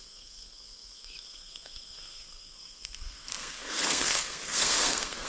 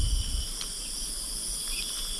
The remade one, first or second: first